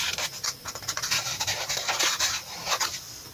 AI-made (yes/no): no